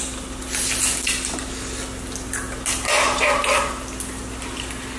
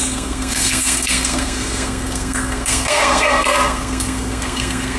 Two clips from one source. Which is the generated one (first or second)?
second